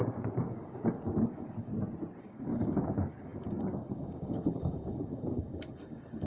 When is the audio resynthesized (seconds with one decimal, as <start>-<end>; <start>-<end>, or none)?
0.0-1.7; 2.2-6.3